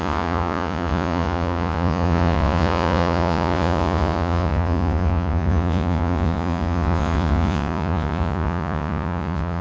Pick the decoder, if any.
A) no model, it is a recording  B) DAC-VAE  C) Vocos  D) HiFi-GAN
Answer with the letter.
C